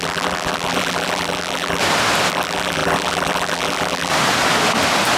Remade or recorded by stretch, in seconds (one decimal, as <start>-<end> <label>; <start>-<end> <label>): 0.0-1.8 remade; 1.8-2.3 recorded; 2.3-4.1 remade; 4.1-5.2 recorded